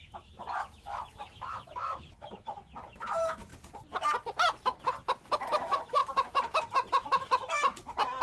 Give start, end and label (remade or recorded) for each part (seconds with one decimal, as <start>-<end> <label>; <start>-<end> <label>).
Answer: 0.0-3.5 remade; 3.5-5.6 recorded; 5.6-6.0 remade; 6.0-6.9 recorded; 6.9-8.2 remade